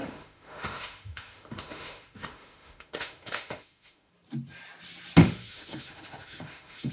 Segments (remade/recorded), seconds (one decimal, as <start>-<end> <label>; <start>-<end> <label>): 0.0-4.1 remade; 4.1-5.2 recorded; 5.2-6.9 remade